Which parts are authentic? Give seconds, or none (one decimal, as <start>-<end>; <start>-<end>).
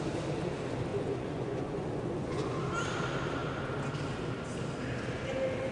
0.0-0.9; 2.6-5.7